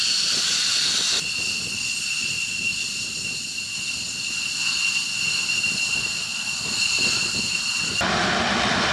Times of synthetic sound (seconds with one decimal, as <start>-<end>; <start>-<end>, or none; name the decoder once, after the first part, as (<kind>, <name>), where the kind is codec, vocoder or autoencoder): none